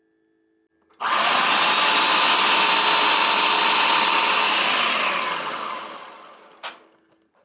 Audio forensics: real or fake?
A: real